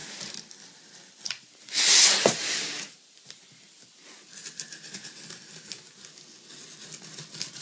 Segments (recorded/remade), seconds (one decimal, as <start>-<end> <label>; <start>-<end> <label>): 0.0-7.6 recorded